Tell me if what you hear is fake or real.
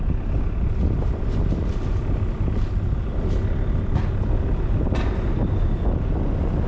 real